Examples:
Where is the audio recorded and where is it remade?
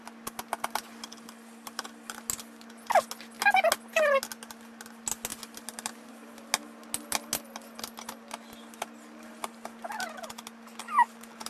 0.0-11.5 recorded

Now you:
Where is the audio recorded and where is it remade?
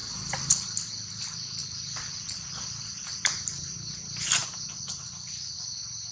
0.0-1.6 recorded; 1.6-3.0 remade; 3.0-6.1 recorded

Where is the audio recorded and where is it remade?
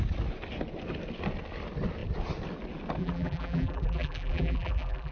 0.0-3.0 recorded; 3.0-5.1 remade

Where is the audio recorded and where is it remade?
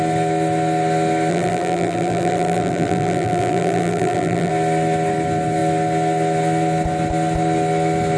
0.0-1.3 recorded; 1.3-4.5 remade; 4.5-8.2 recorded